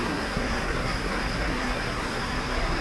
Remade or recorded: remade